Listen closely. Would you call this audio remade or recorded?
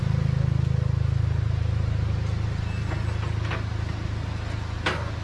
recorded